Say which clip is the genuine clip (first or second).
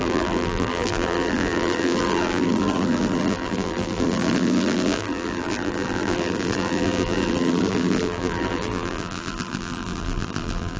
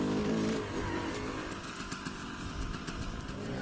second